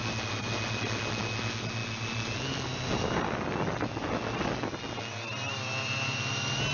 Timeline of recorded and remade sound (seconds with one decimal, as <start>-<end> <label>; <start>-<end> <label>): 0.0-6.7 recorded